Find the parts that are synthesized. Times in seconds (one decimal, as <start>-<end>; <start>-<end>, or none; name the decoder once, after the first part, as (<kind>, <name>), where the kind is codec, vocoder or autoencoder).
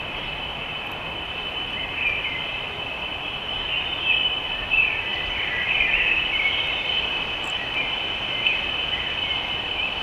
5.1-6.7 (vocoder, BigVGAN v2)